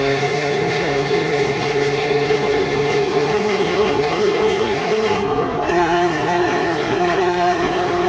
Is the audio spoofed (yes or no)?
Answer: yes